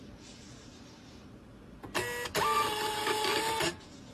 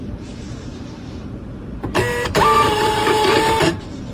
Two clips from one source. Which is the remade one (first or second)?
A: second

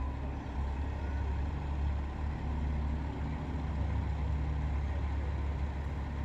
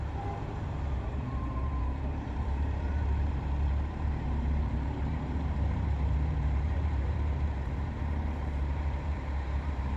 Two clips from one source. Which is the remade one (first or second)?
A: second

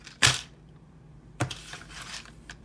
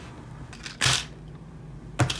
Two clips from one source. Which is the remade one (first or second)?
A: first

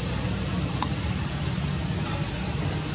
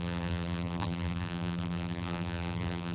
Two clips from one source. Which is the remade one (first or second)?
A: second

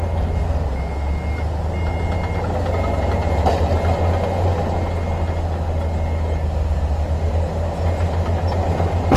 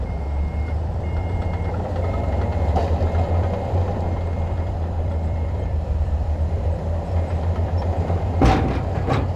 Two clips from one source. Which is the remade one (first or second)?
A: second